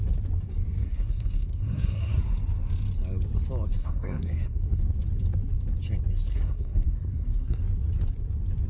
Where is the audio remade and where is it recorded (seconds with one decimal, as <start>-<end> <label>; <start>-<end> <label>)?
0.0-0.8 recorded; 0.8-2.2 remade; 2.2-3.8 recorded; 3.8-4.8 remade; 4.8-6.3 recorded; 6.3-7.6 remade; 7.6-8.7 recorded